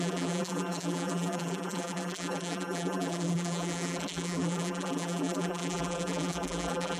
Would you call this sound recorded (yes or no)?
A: no